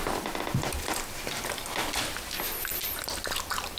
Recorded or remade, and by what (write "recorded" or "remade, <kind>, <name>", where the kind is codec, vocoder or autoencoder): recorded